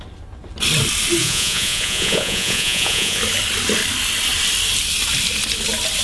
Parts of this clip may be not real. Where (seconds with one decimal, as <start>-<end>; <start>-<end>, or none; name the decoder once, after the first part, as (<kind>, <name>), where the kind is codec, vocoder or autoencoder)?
1.2-3.2 (vocoder, Vocos)